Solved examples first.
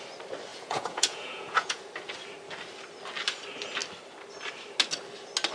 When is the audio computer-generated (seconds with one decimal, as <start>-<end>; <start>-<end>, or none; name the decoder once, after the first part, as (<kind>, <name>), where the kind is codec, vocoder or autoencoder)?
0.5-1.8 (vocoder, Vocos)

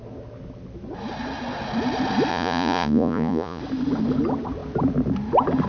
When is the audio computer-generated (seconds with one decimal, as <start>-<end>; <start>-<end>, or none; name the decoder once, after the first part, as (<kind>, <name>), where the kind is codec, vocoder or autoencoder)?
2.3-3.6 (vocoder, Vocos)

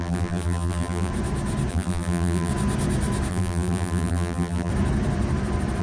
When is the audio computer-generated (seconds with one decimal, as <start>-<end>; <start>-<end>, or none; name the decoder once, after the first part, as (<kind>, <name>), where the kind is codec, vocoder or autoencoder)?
0.0-1.1 (vocoder, BigVGAN v2); 1.7-2.5; 3.3-4.7